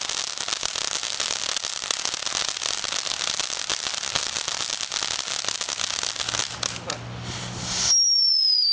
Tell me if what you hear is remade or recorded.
recorded